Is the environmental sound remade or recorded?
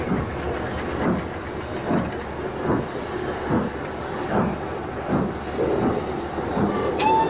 recorded